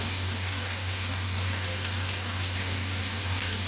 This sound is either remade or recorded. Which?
remade